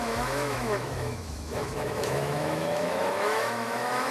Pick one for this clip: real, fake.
fake